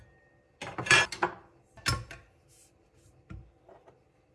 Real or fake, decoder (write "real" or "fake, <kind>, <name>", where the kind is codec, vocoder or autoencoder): real